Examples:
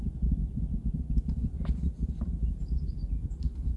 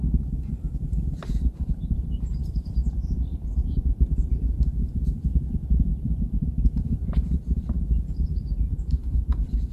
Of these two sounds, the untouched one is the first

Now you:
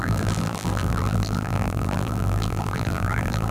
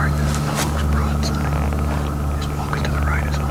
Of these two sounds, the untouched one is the second